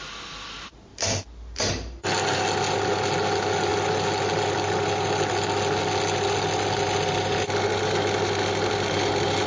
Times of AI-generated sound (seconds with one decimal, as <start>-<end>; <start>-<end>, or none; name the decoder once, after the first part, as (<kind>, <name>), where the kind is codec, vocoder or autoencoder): none